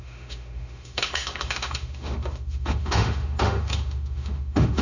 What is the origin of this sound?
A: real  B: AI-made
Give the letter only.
B